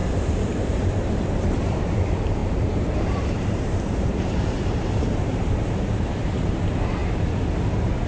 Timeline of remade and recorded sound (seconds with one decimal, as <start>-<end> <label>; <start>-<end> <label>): 0.0-1.8 remade; 1.8-2.4 recorded; 2.4-6.6 remade; 6.6-8.1 recorded